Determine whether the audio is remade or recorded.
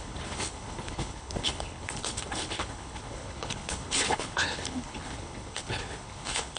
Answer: remade